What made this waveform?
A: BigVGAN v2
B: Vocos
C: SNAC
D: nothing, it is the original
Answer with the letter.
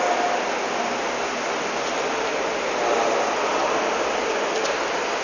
D